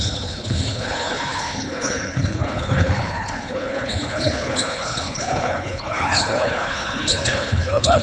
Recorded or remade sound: remade